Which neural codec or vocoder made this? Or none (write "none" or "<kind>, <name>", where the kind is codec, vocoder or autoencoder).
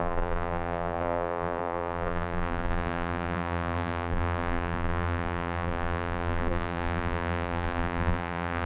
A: vocoder, BigVGAN v2